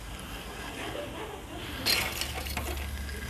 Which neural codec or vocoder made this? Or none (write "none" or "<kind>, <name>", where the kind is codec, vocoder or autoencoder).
none